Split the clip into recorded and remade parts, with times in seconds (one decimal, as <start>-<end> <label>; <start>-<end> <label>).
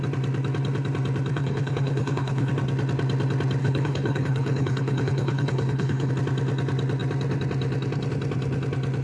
0.0-1.3 recorded; 1.3-2.5 remade; 2.5-3.6 recorded; 3.6-6.1 remade; 6.1-9.0 recorded